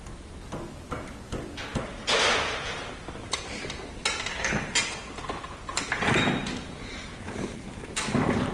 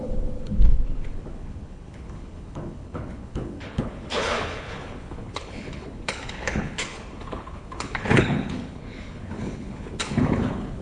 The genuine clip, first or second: first